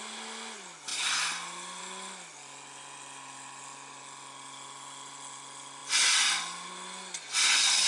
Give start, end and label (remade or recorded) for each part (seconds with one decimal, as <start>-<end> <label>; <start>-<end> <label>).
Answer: 0.0-7.9 recorded